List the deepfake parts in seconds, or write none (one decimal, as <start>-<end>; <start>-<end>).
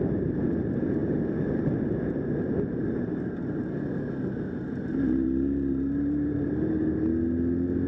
none